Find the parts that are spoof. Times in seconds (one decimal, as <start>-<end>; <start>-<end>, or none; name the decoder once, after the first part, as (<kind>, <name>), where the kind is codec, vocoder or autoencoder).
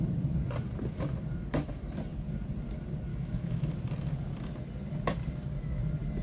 3.1-3.7 (autoencoder, DAC-VAE)